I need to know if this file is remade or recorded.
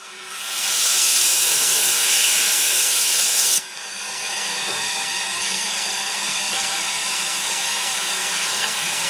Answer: remade